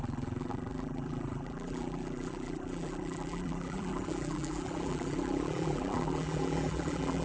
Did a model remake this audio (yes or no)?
yes